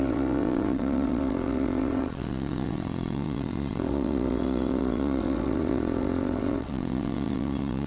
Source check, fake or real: fake